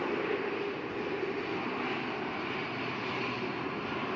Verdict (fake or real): real